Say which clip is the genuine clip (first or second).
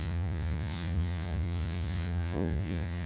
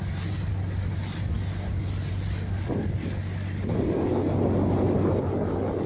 second